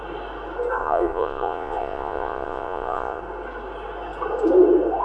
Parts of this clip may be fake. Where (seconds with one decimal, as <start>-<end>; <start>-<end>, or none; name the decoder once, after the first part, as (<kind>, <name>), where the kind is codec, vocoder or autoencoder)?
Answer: 0.8-3.2 (vocoder, Vocos)

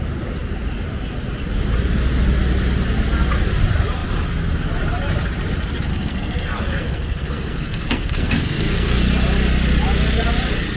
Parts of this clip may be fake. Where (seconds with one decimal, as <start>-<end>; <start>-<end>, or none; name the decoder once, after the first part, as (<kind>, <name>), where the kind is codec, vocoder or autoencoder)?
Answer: 5.9-9.1 (codec, SNAC)

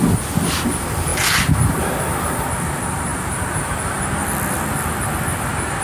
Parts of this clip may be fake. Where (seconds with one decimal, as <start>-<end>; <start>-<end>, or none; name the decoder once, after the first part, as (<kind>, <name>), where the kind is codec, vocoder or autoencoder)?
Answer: none

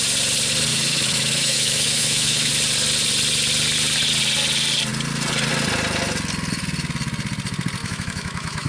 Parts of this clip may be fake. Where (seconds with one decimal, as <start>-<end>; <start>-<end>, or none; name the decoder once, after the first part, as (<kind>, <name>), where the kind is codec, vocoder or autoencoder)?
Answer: 0.7-2.5 (autoencoder, DAC-VAE); 7.8-8.7

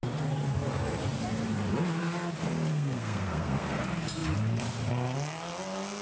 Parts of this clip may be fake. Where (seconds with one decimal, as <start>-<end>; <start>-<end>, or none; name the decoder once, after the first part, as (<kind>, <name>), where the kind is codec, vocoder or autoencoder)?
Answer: 2.7-3.8 (codec, SNAC)